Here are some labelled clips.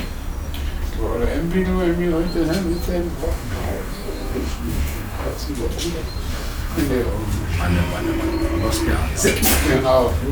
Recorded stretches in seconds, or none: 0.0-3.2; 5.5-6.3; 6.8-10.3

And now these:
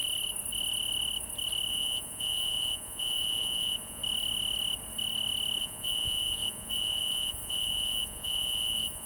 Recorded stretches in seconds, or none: 0.0-1.7; 4.0-5.6

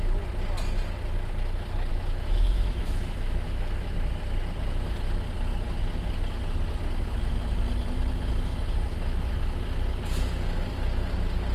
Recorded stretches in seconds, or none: 0.0-1.9; 3.9-11.5

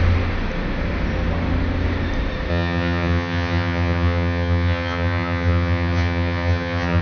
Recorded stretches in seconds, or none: 0.0-2.5

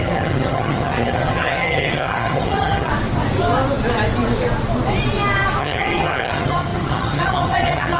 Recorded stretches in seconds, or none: 2.9-5.6

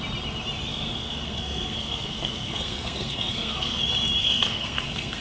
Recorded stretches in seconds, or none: 0.0-0.7; 3.8-4.2

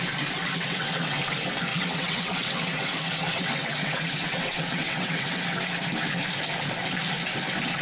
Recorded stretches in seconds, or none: 0.0-0.4; 1.2-1.7; 5.4-7.8